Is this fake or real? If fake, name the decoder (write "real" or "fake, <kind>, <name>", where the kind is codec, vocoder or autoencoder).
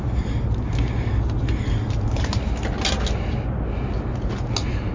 real